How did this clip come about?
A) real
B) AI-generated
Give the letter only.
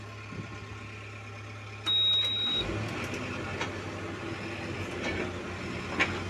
A